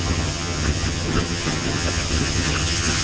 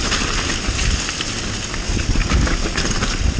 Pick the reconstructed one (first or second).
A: first